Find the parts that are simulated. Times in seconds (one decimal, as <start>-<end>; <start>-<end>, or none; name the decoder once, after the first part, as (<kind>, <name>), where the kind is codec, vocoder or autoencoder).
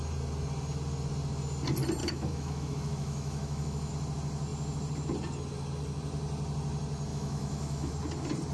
2.0-3.9 (autoencoder, DAC-VAE); 7.1-7.9